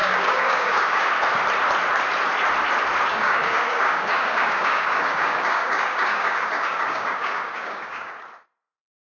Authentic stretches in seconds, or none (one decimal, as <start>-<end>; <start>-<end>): 1.1-3.1; 8.1-9.2